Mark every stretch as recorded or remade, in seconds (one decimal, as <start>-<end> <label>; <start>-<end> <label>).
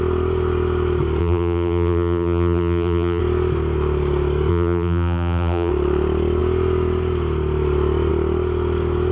0.0-1.2 recorded; 1.2-3.2 remade; 3.2-4.5 recorded; 4.5-5.7 remade; 5.7-9.1 recorded